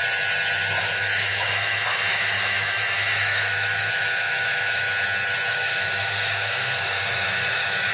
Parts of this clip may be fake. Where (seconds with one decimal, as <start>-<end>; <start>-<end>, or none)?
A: 0.8-4.9; 5.5-7.9